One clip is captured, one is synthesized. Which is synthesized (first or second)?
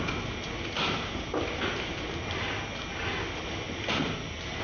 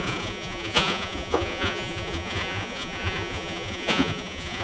second